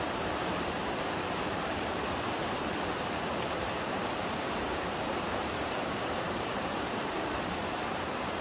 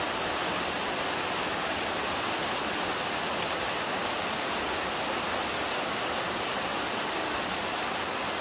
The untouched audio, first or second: second